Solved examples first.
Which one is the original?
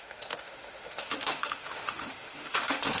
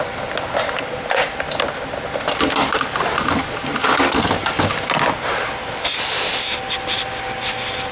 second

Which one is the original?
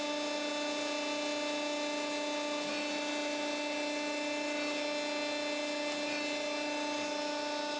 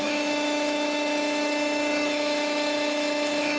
first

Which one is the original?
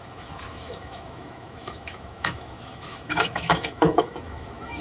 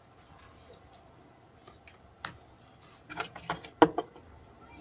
second